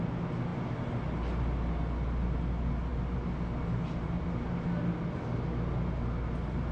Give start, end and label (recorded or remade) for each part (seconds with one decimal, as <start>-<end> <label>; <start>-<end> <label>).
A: 0.0-6.7 recorded